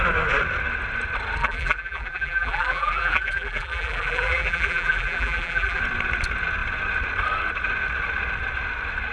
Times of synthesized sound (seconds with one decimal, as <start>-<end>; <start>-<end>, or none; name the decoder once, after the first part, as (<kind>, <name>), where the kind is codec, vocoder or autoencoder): 1.4-5.8 (vocoder, BigVGAN v2)